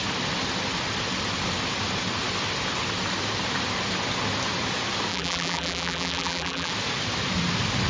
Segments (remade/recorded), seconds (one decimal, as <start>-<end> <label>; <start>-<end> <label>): 0.0-5.1 recorded; 5.1-6.7 remade; 6.7-7.9 recorded